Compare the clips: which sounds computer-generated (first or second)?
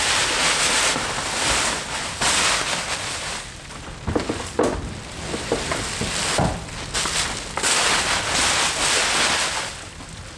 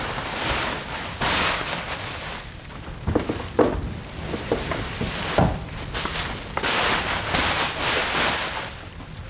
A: second